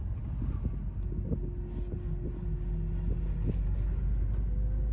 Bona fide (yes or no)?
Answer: yes